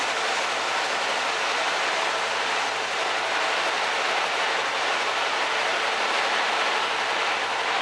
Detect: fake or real real